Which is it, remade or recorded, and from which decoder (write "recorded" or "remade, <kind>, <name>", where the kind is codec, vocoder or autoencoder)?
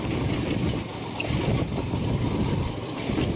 remade, vocoder, BigVGAN v2